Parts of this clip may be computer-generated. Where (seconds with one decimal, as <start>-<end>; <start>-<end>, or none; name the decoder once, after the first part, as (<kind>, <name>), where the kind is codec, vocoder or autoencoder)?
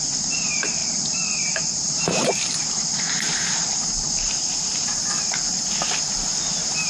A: 0.8-4.9 (vocoder, BigVGAN v2)